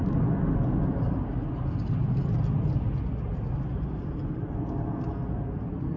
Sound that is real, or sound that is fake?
real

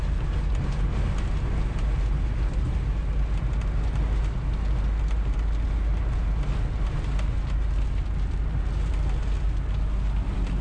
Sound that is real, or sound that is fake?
real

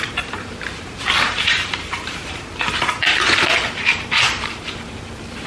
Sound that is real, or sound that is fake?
fake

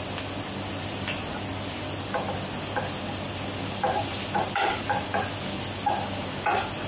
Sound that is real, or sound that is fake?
real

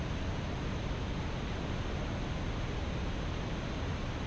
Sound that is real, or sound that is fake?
real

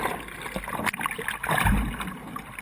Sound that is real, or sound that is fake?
real